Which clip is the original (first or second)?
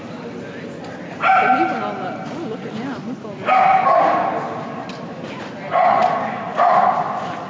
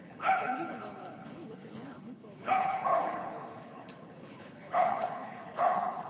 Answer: first